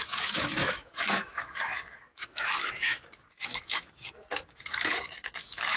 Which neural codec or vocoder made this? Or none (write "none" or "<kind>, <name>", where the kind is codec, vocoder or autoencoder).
autoencoder, DAC-VAE